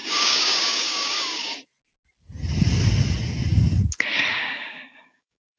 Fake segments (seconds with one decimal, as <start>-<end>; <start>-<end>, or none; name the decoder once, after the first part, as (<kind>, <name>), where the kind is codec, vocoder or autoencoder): 0.0-1.5 (codec, DAC); 4.3-5.6